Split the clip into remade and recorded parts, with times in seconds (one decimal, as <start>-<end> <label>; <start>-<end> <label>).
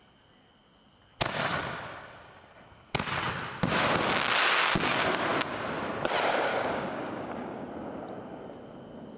0.0-6.5 recorded; 6.5-7.7 remade; 7.7-9.2 recorded